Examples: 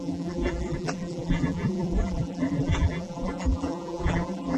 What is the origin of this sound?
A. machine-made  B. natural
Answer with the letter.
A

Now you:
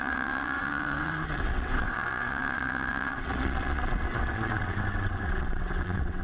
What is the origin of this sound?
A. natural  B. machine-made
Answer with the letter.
B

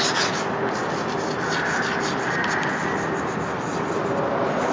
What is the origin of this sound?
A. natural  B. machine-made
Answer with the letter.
A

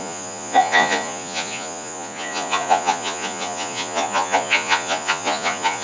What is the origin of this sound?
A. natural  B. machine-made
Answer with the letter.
B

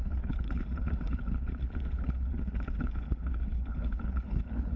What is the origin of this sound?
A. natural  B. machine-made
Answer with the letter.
B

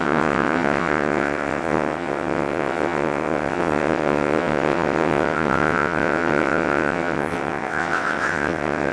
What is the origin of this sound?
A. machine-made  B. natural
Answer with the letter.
A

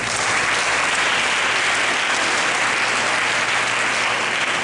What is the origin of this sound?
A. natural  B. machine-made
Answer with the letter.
A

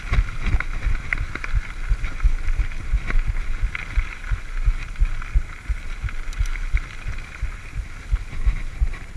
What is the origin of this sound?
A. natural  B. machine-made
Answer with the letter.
A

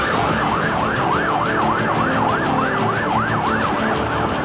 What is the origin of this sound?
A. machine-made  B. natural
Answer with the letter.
B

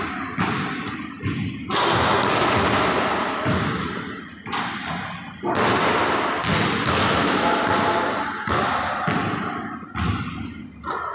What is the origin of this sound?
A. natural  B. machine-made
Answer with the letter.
A